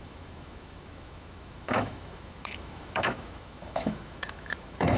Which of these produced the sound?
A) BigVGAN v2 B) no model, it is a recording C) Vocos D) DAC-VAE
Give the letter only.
D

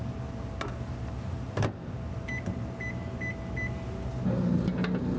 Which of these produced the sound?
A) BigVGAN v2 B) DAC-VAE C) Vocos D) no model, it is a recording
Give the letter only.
D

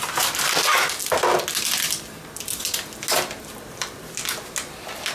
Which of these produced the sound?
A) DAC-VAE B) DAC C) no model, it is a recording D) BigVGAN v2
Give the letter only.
C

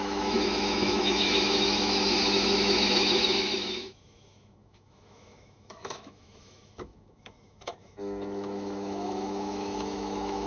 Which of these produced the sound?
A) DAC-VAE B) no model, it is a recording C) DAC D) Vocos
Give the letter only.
A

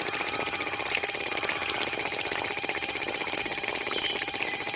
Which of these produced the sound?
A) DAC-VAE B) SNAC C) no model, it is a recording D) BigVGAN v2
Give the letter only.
C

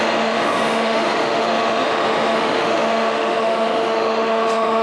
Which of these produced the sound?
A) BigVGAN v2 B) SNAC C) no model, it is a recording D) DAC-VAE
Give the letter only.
D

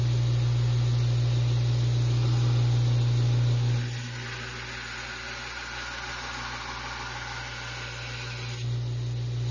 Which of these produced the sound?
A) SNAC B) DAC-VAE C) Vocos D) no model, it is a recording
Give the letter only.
D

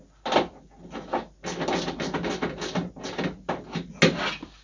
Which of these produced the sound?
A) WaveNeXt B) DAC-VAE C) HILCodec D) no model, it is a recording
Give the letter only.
D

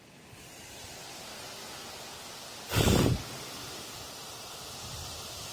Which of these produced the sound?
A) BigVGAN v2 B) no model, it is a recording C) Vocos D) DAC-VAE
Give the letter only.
B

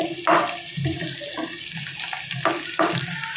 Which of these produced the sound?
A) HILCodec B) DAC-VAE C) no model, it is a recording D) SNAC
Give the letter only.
C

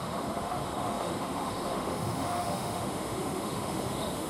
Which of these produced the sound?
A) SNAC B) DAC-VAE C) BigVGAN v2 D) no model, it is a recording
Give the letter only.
B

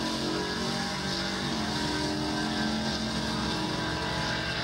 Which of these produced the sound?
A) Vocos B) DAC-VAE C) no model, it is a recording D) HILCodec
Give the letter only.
C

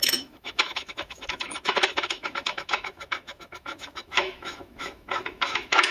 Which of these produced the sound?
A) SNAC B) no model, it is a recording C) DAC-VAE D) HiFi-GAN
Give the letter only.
C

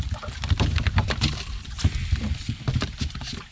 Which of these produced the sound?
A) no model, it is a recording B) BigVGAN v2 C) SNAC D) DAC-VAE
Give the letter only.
A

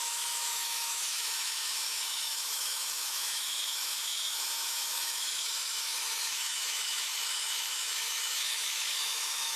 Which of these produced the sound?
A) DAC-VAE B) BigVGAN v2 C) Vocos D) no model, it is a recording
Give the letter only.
A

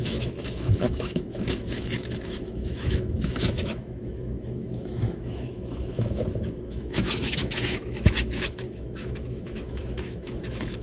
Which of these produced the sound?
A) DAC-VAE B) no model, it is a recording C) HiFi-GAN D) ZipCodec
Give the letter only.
A